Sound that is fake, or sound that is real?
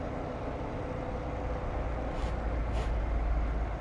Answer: real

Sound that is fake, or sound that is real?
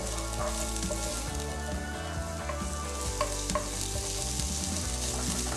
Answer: real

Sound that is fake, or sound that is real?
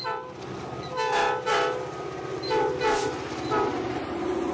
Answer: real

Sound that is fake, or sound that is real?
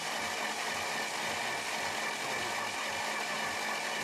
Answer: real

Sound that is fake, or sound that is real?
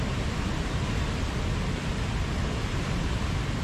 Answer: real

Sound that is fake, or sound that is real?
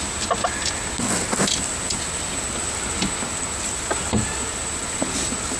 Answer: real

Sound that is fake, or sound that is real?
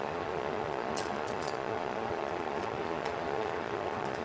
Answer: fake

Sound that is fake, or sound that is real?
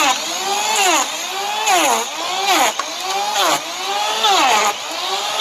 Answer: real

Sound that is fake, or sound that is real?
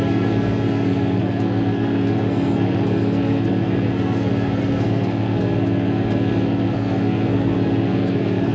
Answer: fake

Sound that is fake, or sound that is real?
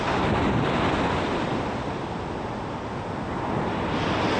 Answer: real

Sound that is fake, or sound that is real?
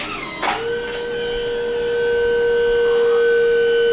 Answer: real